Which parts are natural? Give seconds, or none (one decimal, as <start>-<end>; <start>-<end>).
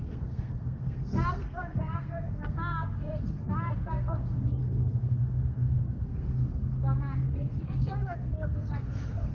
none